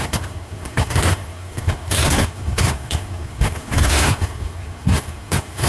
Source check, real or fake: fake